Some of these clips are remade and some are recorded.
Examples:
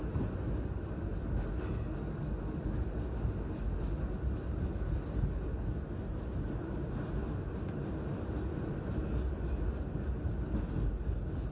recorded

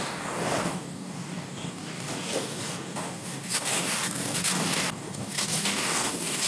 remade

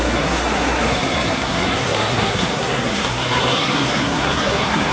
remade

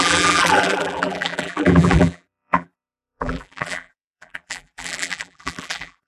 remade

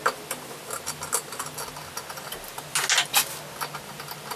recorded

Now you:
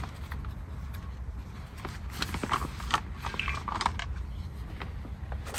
recorded